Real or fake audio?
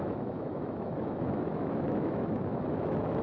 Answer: fake